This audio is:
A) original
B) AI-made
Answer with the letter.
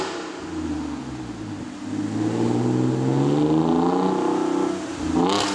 A